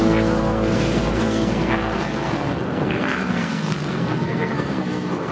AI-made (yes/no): yes